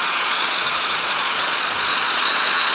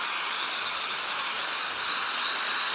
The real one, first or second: second